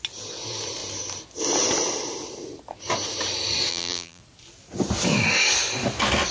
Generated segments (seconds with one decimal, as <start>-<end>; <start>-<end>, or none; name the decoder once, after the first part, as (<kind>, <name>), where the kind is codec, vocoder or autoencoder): 3.7-4.2 (vocoder, BigVGAN v2)